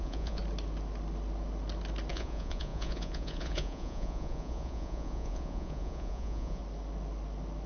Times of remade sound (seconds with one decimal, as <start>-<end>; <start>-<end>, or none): 0.0-0.4; 2.1-6.6